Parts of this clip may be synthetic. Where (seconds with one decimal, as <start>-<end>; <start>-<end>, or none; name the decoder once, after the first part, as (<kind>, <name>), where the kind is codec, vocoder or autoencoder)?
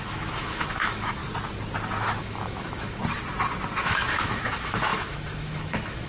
0.0-1.2 (autoencoder, DAC-VAE); 2.2-3.0; 3.8-6.1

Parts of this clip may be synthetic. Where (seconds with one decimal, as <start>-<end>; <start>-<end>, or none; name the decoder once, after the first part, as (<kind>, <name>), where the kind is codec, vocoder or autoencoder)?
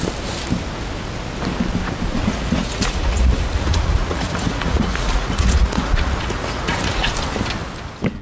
2.2-7.1 (vocoder, Vocos)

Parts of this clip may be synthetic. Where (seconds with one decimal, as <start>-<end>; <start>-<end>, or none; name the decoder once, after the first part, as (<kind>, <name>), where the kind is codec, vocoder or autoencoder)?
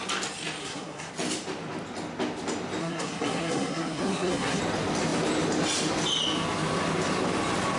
0.6-1.1 (codec, SNAC); 2.8-4.6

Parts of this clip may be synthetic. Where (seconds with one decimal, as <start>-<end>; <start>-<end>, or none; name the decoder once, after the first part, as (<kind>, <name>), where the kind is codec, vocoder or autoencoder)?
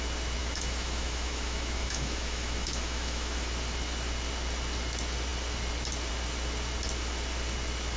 0.4-3.5 (autoencoder, DAC-VAE)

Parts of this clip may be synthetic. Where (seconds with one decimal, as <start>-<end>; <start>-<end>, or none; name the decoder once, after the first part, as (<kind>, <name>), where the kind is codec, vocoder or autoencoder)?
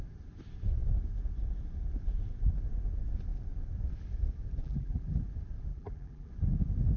4.6-5.2 (vocoder, BigVGAN v2); 5.7-6.3